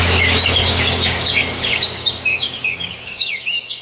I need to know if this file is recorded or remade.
remade